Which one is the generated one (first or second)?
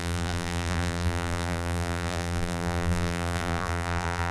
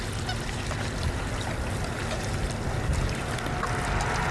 first